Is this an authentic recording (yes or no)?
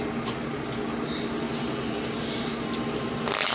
yes